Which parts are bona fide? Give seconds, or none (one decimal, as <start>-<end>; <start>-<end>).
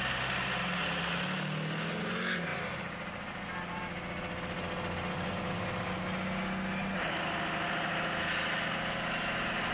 0.0-9.7